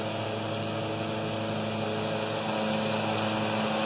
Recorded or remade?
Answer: recorded